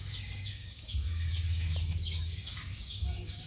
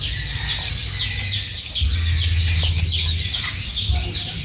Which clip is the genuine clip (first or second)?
second